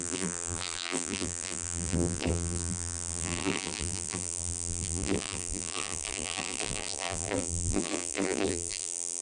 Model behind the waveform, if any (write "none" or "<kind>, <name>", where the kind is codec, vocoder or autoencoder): vocoder, BigVGAN v2